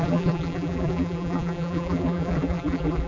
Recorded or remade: remade